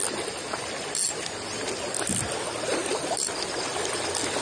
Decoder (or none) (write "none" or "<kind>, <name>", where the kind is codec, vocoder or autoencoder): none